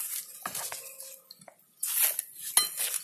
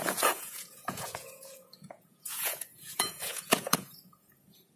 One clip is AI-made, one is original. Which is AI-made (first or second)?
second